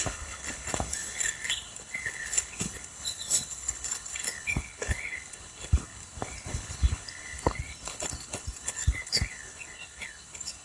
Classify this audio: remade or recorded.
remade